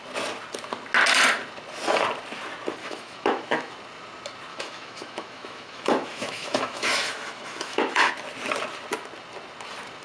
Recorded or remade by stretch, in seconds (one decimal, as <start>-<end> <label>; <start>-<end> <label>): 0.0-2.8 recorded; 2.8-3.7 remade; 3.7-4.5 recorded; 4.5-8.1 remade; 8.1-10.0 recorded